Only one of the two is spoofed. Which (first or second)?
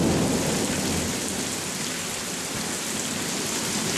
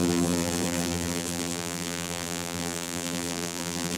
second